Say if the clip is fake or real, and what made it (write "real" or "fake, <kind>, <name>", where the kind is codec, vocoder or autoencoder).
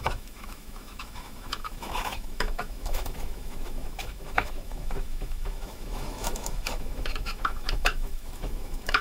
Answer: fake, autoencoder, DAC-VAE